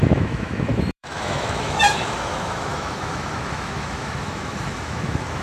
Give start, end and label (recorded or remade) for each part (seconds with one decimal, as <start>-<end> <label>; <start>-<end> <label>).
0.0-5.4 remade